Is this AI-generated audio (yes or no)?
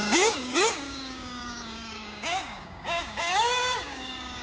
yes